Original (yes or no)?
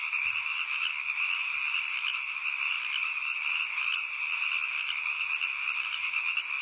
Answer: yes